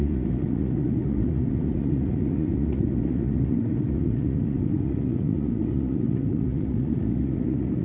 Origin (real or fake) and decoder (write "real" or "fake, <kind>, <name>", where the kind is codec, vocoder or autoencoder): fake, vocoder, Vocos